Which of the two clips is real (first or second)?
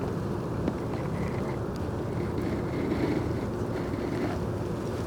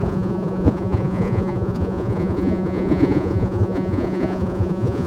first